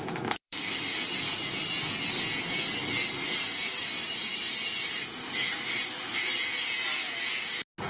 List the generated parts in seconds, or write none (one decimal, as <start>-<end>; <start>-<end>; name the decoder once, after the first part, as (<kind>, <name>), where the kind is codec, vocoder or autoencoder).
0.0-0.8 (vocoder, BigVGAN v2); 1.3-2.0; 4.3-6.7